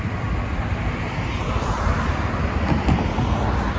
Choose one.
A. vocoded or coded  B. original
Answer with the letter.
B